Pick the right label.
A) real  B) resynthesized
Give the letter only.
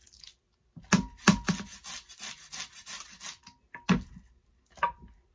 A